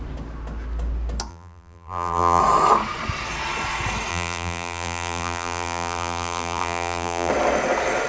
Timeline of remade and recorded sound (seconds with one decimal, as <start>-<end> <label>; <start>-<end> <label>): 0.0-1.3 recorded; 1.3-2.4 remade; 2.4-4.1 recorded; 4.1-7.3 remade; 7.3-8.1 recorded